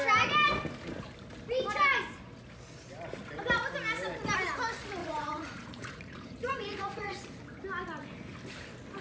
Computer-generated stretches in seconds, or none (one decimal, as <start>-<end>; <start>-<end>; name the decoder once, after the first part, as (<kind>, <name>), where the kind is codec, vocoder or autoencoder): 5.0-7.2 (vocoder, Vocos)